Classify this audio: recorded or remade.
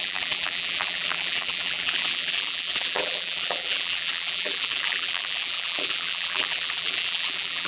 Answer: remade